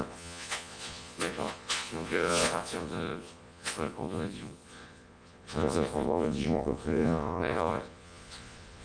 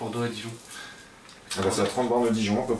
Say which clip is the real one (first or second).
second